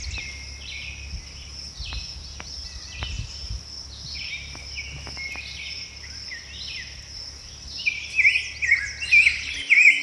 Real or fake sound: real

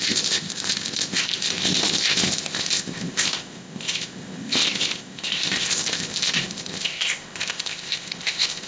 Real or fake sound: fake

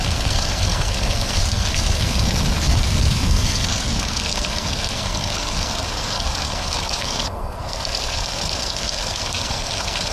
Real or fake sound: fake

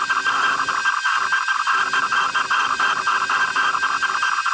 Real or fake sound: real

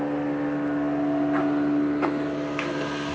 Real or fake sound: real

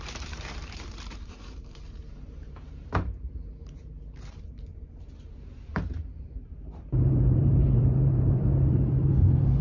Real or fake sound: fake